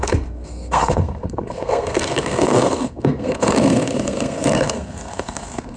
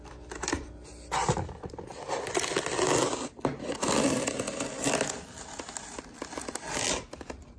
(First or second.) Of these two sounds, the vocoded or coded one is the first